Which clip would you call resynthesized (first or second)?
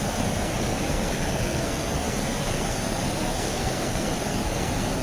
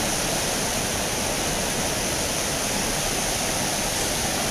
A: first